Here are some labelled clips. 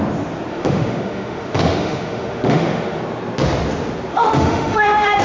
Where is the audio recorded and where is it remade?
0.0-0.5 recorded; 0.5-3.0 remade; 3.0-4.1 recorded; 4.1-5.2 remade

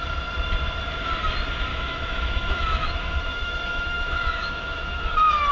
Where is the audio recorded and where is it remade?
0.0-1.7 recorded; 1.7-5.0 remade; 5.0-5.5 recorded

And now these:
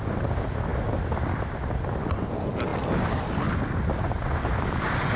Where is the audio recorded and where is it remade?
0.0-5.2 recorded